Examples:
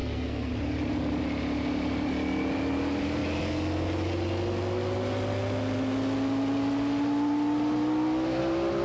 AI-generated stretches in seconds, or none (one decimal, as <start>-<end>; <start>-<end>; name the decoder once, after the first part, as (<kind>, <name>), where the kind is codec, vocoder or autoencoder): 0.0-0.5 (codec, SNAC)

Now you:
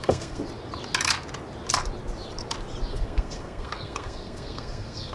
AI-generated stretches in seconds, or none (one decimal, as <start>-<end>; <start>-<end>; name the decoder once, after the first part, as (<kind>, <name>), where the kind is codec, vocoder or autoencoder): 0.0-0.4 (codec, SNAC); 2.9-5.1

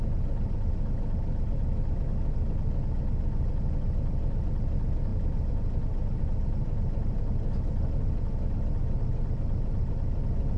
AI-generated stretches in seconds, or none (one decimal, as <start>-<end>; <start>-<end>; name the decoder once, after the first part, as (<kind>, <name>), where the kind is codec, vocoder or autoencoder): none